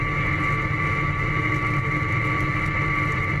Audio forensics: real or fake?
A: real